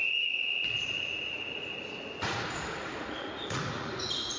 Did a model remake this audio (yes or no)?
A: yes